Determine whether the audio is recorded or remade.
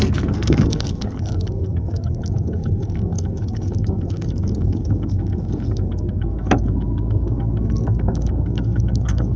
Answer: remade